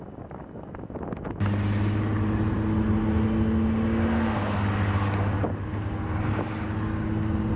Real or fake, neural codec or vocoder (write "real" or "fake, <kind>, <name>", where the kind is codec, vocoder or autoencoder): real